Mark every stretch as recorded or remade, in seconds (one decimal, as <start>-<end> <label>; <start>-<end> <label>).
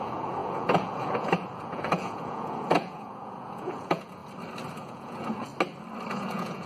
0.0-4.2 remade; 4.2-4.7 recorded; 4.7-5.5 remade; 5.5-6.1 recorded; 6.1-6.7 remade